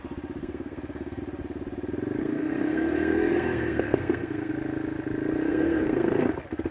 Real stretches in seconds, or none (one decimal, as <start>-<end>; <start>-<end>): 0.0-0.4; 1.2-2.2; 4.5-5.5; 6.3-6.7